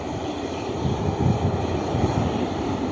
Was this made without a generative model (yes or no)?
no